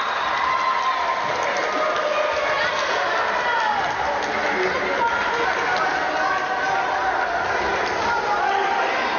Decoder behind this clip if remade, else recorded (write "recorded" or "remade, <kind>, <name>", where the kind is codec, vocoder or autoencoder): recorded